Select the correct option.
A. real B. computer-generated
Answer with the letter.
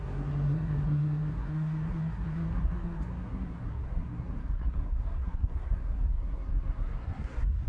B